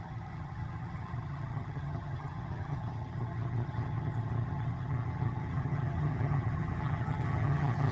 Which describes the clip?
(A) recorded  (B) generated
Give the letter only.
B